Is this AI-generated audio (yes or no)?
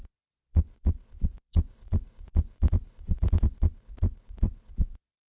yes